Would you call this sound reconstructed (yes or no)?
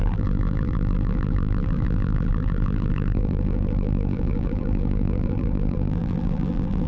yes